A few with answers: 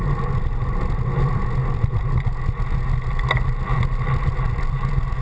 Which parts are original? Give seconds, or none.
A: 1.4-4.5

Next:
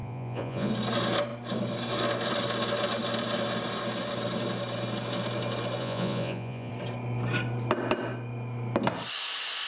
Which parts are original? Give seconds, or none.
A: 0.7-5.8; 6.7-9.7

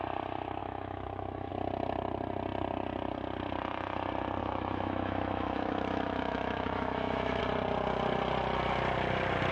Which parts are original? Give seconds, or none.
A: 0.0-0.6; 1.5-4.4; 7.4-9.5